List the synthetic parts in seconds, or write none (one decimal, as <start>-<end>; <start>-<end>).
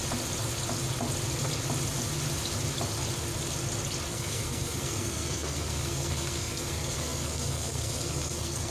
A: 4.1-8.7